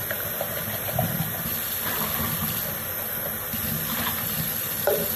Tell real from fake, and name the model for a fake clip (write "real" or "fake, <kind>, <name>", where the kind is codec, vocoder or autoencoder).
real